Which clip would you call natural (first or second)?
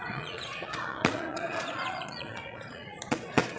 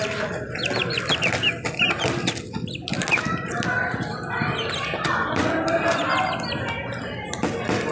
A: second